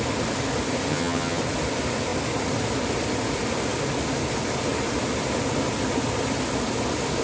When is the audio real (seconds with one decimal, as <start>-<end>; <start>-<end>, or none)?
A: 0.0-0.9; 1.4-7.2